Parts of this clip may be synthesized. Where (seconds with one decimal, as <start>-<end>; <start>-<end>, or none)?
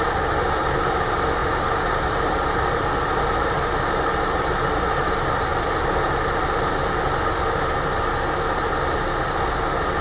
none